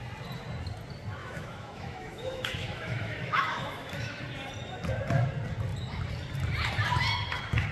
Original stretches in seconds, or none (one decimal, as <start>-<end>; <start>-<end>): 0.0-1.2; 4.2-7.7